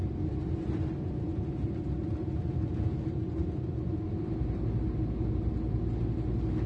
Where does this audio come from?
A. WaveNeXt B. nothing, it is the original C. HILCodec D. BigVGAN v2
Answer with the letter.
B